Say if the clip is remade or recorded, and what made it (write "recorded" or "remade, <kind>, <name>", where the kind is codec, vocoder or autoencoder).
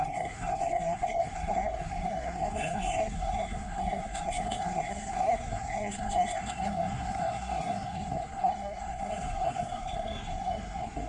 remade, codec, SNAC